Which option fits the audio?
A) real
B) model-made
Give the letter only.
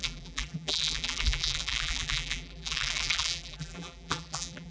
B